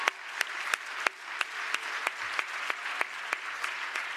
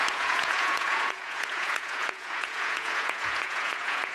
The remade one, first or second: second